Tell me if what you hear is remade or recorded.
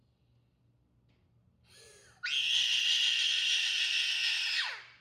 recorded